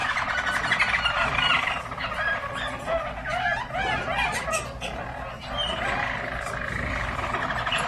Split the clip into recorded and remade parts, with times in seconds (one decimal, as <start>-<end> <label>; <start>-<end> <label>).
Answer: 0.0-1.8 remade; 1.8-7.9 recorded